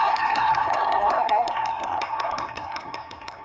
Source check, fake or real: fake